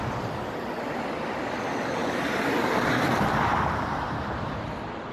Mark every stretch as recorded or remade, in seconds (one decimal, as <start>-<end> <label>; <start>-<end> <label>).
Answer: 0.0-2.0 recorded; 2.0-5.1 remade